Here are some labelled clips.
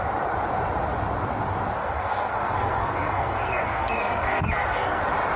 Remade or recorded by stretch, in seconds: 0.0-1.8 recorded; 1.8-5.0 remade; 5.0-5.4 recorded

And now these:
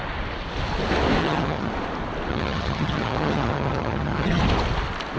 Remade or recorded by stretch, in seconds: 0.0-1.2 recorded; 1.2-1.7 remade; 1.7-2.3 recorded; 2.3-4.4 remade; 4.4-5.2 recorded

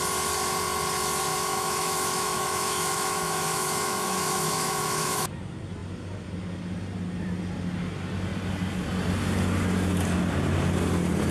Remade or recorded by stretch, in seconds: 0.0-1.3 recorded; 1.3-5.3 remade; 5.3-11.3 recorded

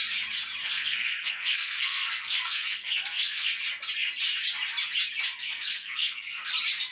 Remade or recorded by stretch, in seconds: 0.0-0.6 recorded; 0.6-3.6 remade; 3.6-5.4 recorded; 5.4-6.5 remade; 6.5-6.9 recorded

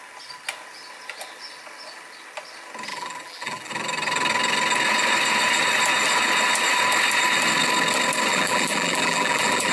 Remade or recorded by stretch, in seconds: 0.0-2.9 recorded; 2.9-3.7 remade; 3.7-8.3 recorded; 8.3-9.7 remade

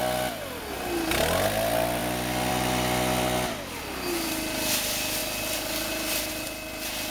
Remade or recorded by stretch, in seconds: 0.0-7.1 recorded